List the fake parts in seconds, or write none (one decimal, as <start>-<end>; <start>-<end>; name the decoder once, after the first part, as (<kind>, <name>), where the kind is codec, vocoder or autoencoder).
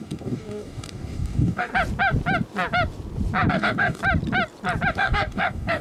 0.0-1.7 (codec, DAC); 3.5-4.0; 4.9-5.8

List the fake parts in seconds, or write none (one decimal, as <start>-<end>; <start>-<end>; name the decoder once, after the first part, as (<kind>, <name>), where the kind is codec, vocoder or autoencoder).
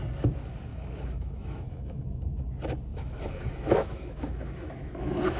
0.7-2.2 (autoencoder, DAC-VAE); 2.9-5.4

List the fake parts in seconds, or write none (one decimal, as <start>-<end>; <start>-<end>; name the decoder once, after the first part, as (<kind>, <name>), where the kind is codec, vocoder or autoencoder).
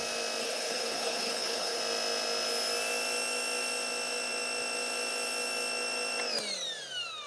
0.4-1.8 (codec, HILCodec)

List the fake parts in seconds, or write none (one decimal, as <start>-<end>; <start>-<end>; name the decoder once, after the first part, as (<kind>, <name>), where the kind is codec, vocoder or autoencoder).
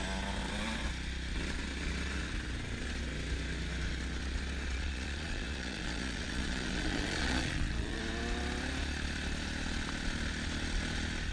4.7-8.0 (vocoder, Vocos)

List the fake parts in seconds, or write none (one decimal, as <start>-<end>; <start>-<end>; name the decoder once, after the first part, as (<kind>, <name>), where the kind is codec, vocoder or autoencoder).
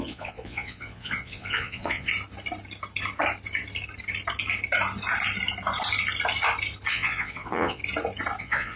0.0-2.1 (vocoder, Vocos); 6.9-7.8; 8.4-8.8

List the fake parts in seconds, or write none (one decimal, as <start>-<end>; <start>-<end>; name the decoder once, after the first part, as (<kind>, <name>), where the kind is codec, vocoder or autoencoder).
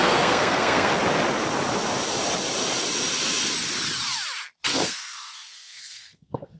0.0-0.9 (codec, SNAC); 4.7-6.6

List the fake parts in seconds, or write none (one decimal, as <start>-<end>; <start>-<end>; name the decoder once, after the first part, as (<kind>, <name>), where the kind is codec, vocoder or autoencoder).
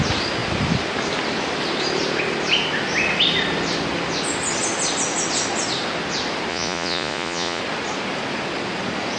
6.5-7.6 (vocoder, Vocos)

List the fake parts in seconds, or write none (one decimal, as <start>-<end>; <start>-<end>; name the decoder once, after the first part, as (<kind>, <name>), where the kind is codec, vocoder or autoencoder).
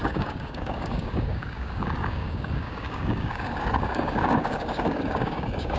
0.0-5.8 (codec, DAC)